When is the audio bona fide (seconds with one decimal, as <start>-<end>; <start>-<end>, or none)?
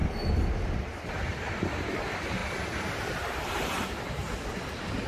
0.0-1.1; 2.4-3.0; 4.2-5.1